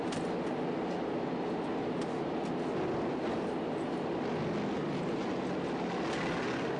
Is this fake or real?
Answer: real